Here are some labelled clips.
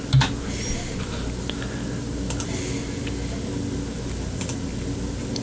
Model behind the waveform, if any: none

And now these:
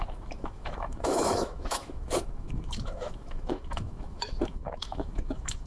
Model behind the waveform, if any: autoencoder, DAC-VAE